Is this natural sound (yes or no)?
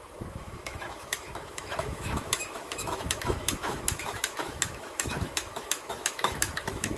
no